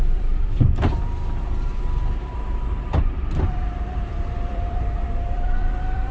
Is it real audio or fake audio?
fake